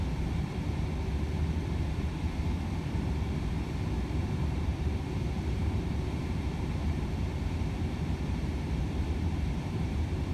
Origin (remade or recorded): remade